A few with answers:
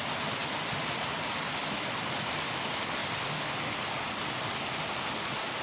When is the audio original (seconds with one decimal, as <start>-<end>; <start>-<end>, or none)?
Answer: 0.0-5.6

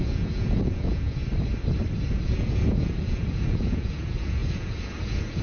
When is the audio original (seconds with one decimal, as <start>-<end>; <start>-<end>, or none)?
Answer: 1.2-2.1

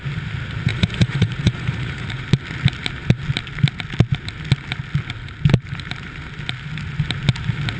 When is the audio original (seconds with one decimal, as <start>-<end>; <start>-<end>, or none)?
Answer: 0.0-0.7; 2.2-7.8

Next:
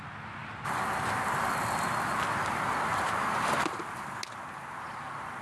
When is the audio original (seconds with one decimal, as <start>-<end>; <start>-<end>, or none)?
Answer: 0.0-5.4

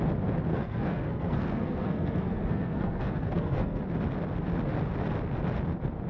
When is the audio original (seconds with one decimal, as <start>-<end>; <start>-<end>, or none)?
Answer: 0.0-0.5; 3.8-6.1

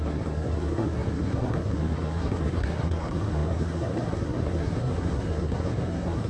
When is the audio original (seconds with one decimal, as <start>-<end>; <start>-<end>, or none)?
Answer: none